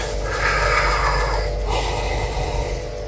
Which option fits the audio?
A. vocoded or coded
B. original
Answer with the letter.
B